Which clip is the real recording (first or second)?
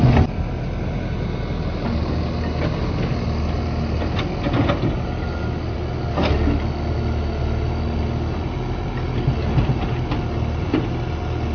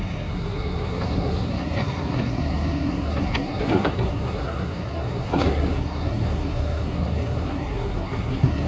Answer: first